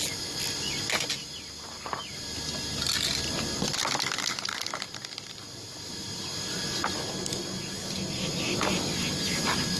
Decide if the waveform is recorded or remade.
recorded